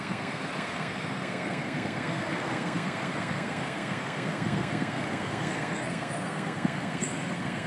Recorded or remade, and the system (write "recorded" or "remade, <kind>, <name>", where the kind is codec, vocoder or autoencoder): remade, codec, SNAC